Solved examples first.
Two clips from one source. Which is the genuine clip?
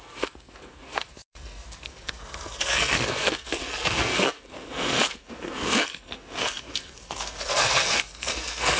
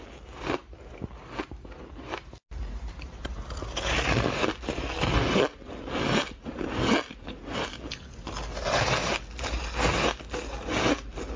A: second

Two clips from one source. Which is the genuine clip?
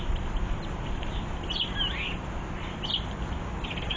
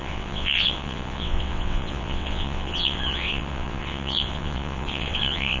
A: first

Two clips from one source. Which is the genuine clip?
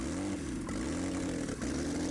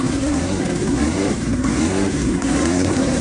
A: first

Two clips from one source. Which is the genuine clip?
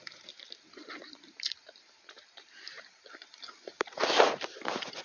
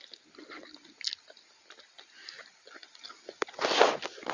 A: second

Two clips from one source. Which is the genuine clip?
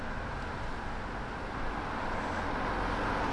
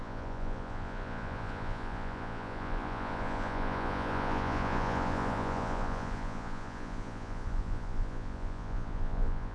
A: first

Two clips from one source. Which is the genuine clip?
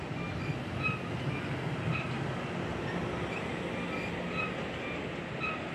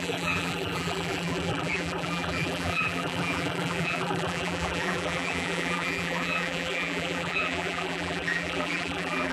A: first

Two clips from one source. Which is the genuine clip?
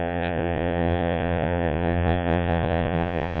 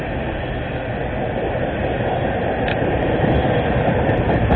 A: second